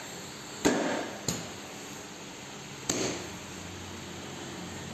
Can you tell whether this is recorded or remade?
recorded